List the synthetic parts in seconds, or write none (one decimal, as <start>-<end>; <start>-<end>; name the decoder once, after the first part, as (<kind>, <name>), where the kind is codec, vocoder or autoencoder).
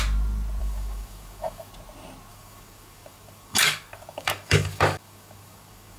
0.6-1.7 (codec, DAC); 2.3-6.0